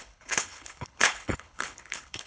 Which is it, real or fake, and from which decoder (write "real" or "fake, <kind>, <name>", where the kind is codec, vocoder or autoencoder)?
fake, codec, HILCodec